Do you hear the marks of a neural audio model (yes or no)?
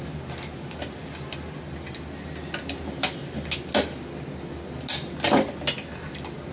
no